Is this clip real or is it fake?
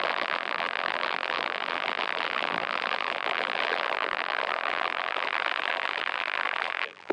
fake